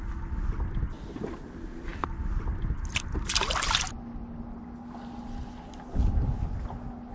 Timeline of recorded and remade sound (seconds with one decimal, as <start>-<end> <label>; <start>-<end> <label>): 0.0-7.1 recorded